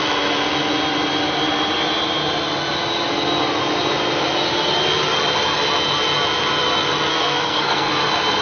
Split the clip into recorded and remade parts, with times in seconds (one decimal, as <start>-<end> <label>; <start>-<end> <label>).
0.0-7.1 recorded; 7.1-7.9 remade; 7.9-8.4 recorded